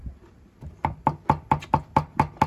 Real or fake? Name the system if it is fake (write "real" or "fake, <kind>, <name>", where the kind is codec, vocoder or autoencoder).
real